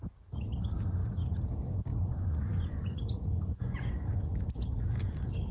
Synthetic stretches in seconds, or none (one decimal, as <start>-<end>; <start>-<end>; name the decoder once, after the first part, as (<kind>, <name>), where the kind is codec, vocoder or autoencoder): 1.9-4.4 (vocoder, Vocos)